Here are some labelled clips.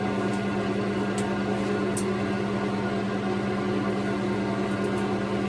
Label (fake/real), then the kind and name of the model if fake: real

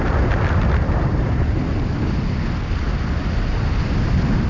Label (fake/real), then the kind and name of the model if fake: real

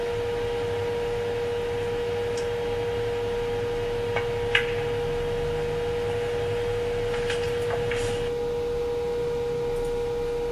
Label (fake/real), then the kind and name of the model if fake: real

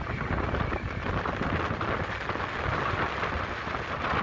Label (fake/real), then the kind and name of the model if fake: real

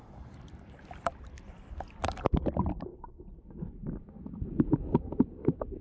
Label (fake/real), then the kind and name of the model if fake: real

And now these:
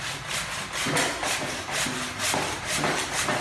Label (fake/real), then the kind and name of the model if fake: real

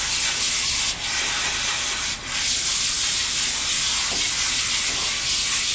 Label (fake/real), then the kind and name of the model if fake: real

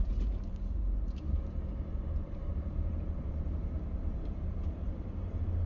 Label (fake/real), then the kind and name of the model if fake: fake, vocoder, BigVGAN v2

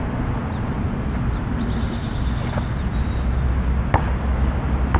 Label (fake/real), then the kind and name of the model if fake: real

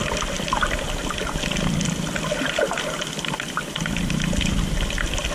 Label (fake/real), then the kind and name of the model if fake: real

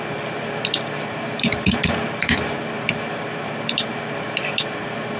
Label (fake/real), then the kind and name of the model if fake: fake, vocoder, BigVGAN v2